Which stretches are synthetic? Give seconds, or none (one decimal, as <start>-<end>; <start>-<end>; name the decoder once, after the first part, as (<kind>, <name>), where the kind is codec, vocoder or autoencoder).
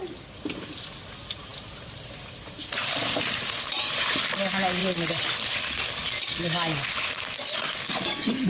1.5-4.2 (vocoder, BigVGAN v2)